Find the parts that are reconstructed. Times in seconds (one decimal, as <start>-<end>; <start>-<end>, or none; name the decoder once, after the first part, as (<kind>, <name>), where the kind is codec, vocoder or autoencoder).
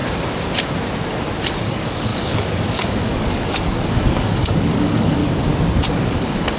1.6-5.2 (codec, DAC); 5.9-6.6